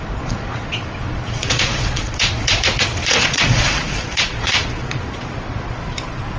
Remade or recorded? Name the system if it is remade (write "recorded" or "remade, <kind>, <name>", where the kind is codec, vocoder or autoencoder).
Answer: remade, vocoder, Vocos